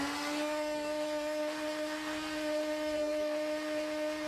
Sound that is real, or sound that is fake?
fake